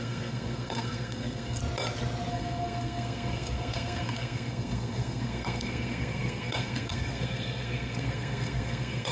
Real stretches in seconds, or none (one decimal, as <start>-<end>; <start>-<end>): 1.6-2.3